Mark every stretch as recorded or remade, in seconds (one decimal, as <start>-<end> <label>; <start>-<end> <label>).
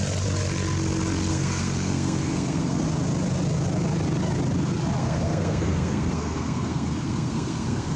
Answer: 0.0-1.3 recorded; 1.3-2.8 remade; 2.8-5.0 recorded; 5.0-8.0 remade